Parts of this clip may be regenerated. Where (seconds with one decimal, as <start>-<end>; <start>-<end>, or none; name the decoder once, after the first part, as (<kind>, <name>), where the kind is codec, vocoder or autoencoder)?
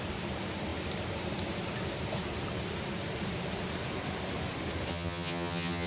4.9-5.9 (vocoder, HiFi-GAN)